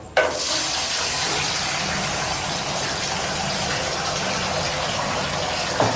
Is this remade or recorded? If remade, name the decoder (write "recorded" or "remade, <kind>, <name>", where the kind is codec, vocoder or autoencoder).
recorded